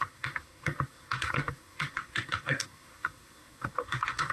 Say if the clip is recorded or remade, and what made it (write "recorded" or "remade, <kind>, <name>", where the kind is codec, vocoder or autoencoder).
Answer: remade, codec, SNAC